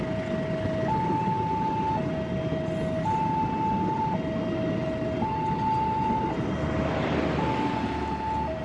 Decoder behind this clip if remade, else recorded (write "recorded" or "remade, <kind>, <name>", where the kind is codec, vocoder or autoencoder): recorded